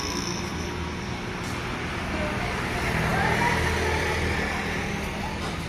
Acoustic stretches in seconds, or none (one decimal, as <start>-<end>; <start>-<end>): 0.0-5.7